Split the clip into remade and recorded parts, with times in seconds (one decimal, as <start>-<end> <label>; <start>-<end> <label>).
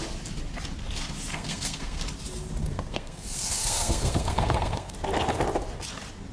0.0-1.3 recorded; 1.3-2.0 remade; 2.0-2.6 recorded; 2.6-4.9 remade; 4.9-6.3 recorded